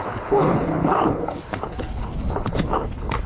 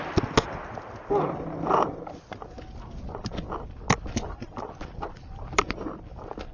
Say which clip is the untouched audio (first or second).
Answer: second